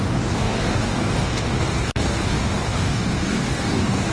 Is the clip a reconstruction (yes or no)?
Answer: yes